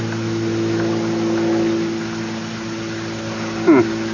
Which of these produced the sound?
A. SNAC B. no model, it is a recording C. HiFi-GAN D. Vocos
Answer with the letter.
B